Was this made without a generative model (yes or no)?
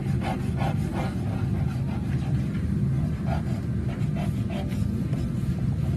yes